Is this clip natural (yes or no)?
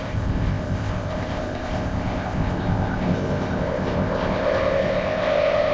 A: no